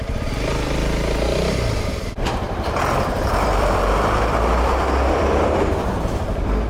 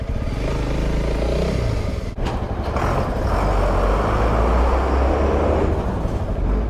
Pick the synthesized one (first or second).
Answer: first